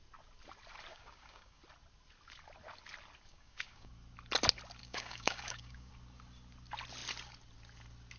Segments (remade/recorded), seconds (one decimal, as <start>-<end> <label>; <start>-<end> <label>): 0.0-0.9 recorded; 0.9-1.6 remade; 1.6-3.3 recorded; 3.3-3.9 remade; 3.9-4.8 recorded; 4.8-5.9 remade; 5.9-8.2 recorded